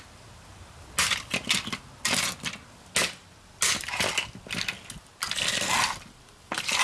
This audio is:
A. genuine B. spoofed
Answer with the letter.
A